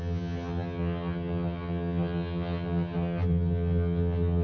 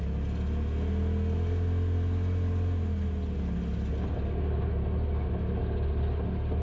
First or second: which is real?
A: second